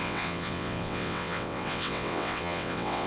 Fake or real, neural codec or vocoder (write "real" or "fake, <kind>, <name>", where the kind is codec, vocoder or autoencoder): fake, vocoder, WaveNeXt